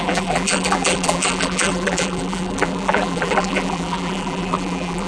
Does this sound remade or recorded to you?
remade